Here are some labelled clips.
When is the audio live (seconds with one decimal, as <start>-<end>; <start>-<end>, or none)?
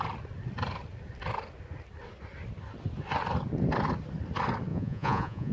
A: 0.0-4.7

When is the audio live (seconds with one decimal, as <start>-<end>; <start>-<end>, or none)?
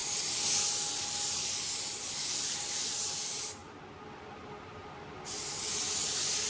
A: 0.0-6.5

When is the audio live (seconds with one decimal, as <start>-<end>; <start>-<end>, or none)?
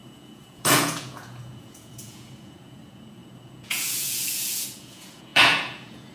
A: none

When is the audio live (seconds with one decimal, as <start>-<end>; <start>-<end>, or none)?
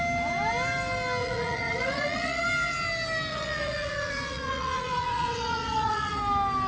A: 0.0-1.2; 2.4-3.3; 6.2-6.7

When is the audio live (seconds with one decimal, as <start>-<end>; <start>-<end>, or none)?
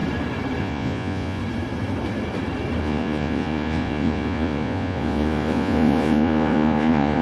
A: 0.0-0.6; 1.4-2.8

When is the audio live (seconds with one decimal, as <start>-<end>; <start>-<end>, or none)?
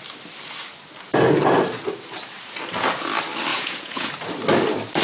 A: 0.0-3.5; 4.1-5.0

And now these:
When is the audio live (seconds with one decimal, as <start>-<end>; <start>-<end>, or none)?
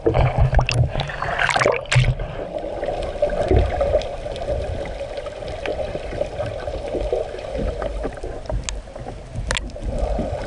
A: 0.0-10.5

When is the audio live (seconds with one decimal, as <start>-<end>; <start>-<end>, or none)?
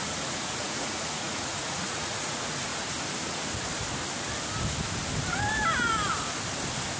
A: 2.7-7.0